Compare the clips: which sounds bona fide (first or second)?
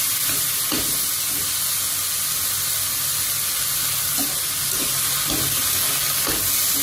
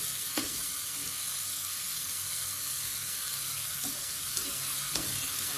first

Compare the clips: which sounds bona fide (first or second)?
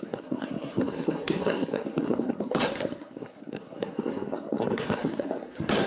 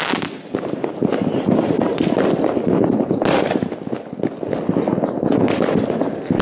second